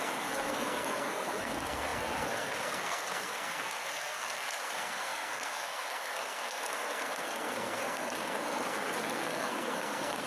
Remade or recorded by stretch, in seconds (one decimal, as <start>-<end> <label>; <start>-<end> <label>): 0.0-10.3 remade